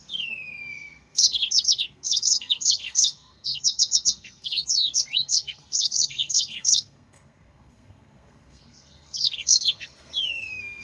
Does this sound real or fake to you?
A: fake